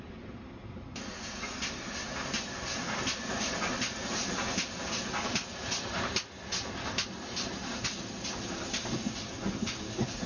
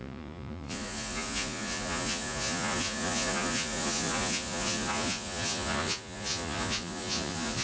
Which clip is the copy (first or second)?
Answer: second